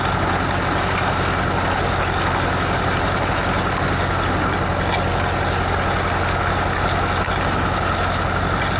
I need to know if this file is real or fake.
real